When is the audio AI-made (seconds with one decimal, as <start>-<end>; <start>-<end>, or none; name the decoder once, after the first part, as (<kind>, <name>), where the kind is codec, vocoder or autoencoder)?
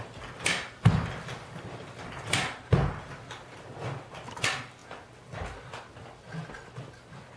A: none